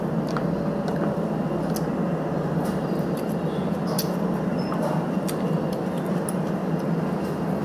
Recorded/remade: recorded